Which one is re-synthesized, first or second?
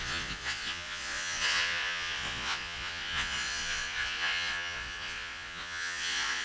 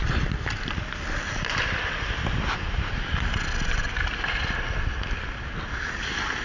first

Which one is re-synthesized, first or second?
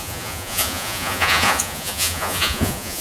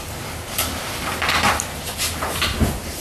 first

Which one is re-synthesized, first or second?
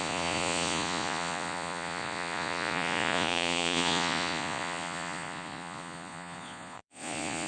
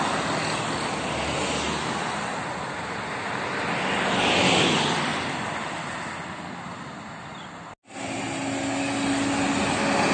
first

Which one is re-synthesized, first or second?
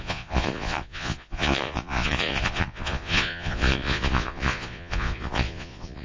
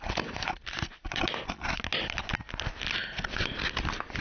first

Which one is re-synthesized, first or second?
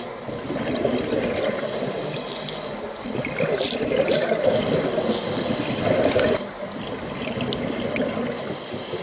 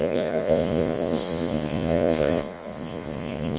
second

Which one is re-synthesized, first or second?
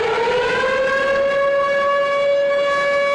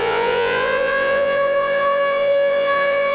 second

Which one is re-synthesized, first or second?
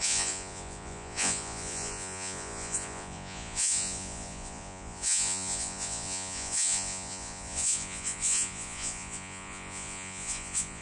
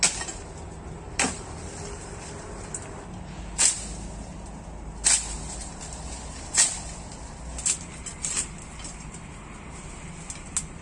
first